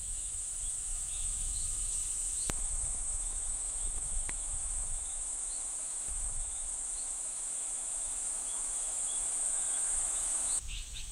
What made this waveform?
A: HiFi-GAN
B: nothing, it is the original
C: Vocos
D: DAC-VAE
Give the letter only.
D